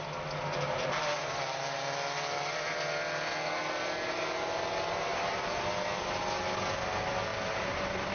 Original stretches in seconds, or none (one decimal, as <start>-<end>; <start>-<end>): 0.0-5.1; 5.7-7.3